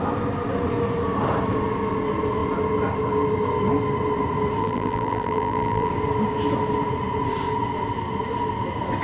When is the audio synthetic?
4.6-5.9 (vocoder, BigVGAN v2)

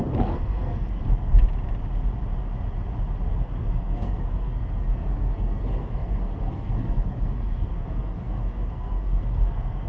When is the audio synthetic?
0.0-1.0 (codec, SNAC); 3.3-9.9

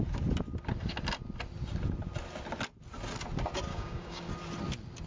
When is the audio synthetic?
3.7-4.3 (codec, DAC)

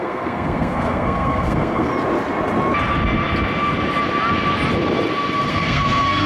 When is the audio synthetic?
0.0-1.9 (codec, SNAC); 5.5-6.3

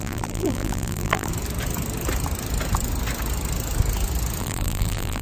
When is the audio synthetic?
0.0-1.3 (vocoder, BigVGAN v2); 4.4-5.2

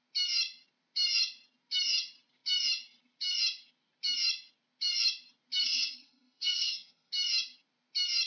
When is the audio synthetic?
5.6-7.1 (codec, SNAC)